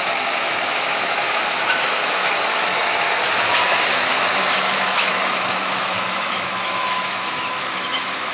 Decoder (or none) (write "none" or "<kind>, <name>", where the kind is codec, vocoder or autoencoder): autoencoder, DAC-VAE